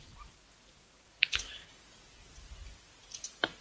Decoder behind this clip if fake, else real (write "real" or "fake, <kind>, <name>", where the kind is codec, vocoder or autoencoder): fake, vocoder, BigVGAN v2